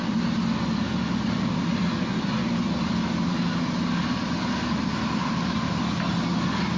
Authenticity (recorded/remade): recorded